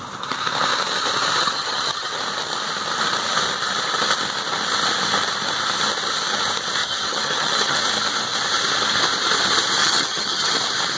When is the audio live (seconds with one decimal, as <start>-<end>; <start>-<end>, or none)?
0.0-1.4; 2.2-6.8; 7.8-9.8; 10.5-11.0